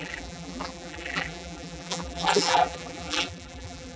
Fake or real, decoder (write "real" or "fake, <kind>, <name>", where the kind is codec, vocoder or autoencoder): fake, vocoder, BigVGAN v2